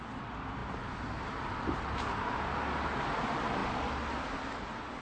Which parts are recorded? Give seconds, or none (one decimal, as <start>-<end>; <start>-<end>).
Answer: 0.0-5.0